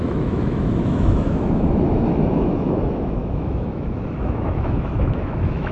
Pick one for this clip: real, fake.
fake